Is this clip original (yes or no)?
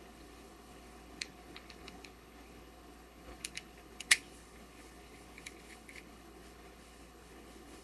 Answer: no